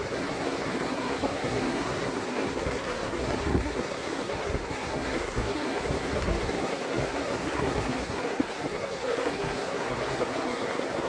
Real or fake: fake